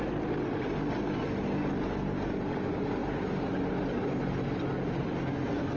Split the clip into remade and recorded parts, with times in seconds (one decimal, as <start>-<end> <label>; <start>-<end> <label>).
0.0-5.8 recorded